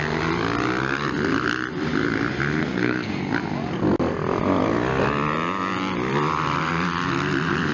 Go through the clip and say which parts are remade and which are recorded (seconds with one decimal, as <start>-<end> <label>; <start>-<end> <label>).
0.0-2.6 recorded; 2.6-3.1 remade; 3.1-7.7 recorded